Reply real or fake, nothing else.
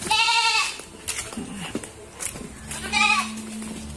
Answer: real